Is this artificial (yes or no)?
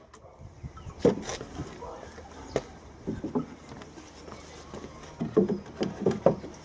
no